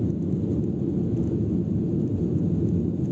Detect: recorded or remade recorded